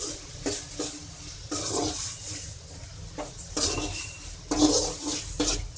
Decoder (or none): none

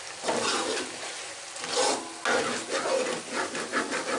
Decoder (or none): none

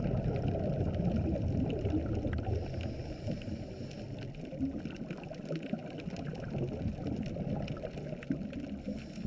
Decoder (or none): none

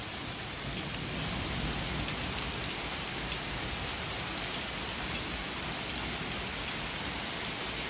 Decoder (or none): none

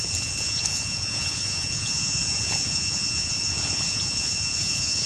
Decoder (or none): vocoder, Vocos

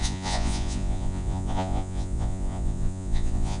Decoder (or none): vocoder, Vocos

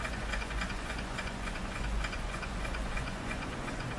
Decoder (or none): vocoder, Vocos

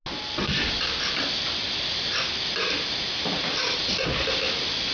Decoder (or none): none